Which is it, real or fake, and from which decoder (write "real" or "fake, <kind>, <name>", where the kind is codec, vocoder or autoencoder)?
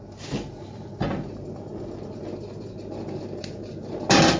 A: real